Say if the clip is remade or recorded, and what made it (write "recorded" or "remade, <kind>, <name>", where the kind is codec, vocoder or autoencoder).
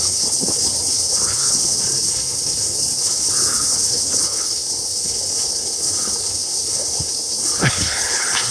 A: remade, codec, HILCodec